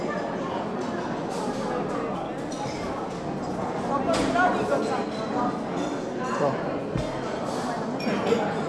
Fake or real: real